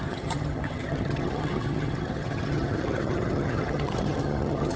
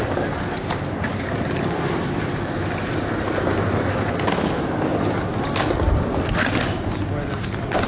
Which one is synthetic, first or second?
first